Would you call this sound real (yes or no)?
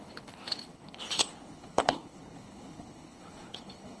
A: no